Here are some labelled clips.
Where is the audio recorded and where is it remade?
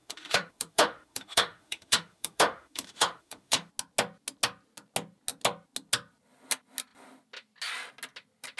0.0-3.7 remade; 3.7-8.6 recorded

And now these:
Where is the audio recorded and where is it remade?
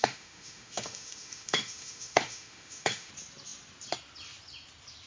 0.0-3.1 remade; 3.1-5.1 recorded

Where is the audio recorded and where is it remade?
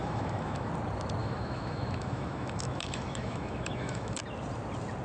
0.0-0.7 remade; 0.7-1.2 recorded; 1.2-4.2 remade; 4.2-5.0 recorded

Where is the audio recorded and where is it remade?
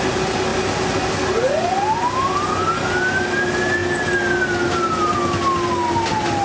0.0-6.4 recorded